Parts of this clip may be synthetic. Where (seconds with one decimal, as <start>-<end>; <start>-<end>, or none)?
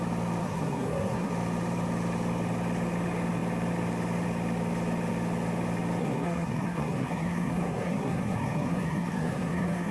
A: 0.4-1.3; 6.0-9.9